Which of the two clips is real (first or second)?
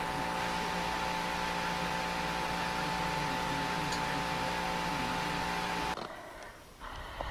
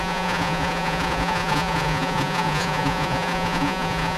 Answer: first